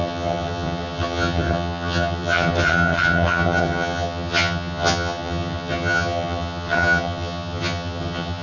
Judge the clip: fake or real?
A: fake